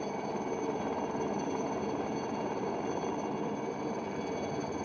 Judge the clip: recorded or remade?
recorded